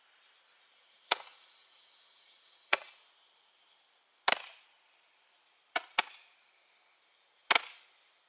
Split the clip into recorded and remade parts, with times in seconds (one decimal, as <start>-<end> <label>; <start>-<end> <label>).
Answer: 0.0-0.5 recorded; 0.5-2.9 remade; 2.9-8.3 recorded